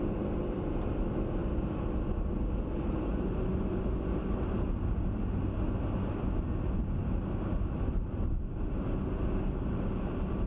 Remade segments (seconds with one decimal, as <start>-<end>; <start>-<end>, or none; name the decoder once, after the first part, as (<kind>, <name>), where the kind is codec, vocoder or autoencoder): none